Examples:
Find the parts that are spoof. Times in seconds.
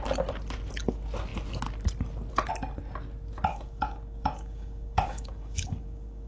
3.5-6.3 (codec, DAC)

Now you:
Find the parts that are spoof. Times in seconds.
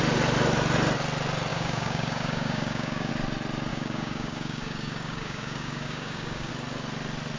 1.5-3.1 (codec, DAC); 3.7-6.5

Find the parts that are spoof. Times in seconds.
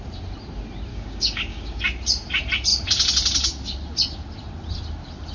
0.9-1.8 (codec, DAC)